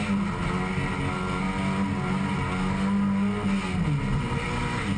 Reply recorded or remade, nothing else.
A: recorded